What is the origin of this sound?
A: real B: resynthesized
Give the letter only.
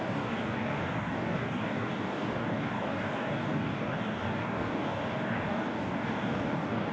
B